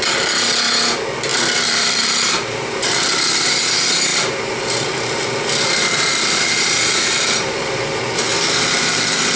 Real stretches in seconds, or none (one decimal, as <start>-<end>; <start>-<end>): 0.0-1.3; 3.5-4.1; 7.8-9.4